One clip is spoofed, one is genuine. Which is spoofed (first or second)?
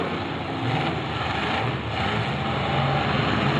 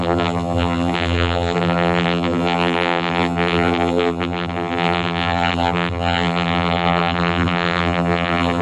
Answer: second